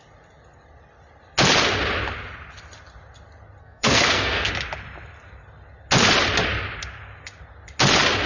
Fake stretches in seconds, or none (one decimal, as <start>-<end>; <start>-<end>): 3.6-4.5

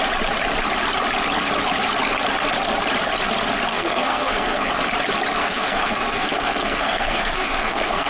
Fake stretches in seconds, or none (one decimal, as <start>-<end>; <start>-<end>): 3.7-4.7; 5.4-8.1

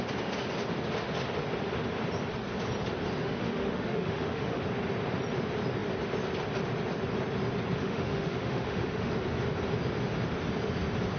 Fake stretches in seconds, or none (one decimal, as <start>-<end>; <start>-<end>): 3.2-4.6; 7.8-9.1

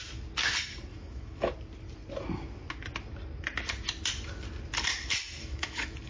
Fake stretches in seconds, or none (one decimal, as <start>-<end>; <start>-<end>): 0.9-1.5; 5.4-6.1

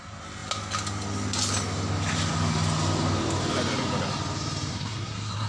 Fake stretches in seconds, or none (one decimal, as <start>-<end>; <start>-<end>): 4.7-5.5

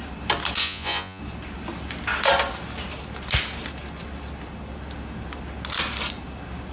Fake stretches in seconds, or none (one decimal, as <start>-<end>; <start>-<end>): 0.6-1.2

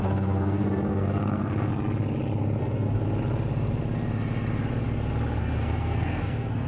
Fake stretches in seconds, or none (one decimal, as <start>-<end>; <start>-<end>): 0.0-1.7; 2.6-3.0; 5.4-6.7

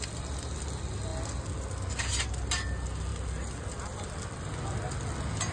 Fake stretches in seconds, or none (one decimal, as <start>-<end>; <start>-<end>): none